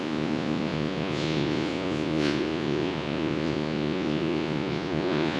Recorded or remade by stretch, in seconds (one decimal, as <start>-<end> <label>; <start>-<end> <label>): 0.0-5.4 remade